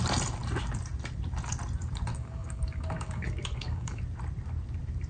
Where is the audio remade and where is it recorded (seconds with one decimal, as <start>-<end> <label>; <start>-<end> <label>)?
0.0-2.1 recorded; 2.1-4.0 remade; 4.0-5.1 recorded